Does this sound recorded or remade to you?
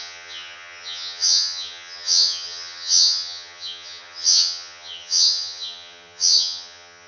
remade